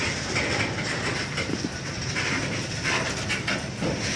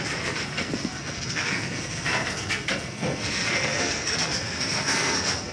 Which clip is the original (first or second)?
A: first